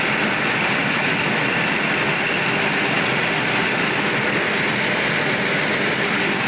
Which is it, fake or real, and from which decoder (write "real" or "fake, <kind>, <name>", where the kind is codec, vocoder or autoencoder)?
real